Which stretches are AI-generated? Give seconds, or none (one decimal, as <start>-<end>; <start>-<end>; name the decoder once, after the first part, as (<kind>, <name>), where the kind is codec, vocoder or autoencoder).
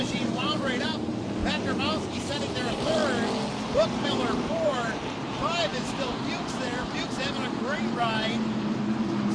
0.0-1.4 (vocoder, BigVGAN v2); 2.3-3.0; 3.6-9.3